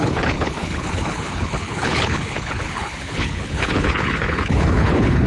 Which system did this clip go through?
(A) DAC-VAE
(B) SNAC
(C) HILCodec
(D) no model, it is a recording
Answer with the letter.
C